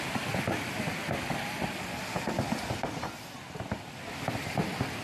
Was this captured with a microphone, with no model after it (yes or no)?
yes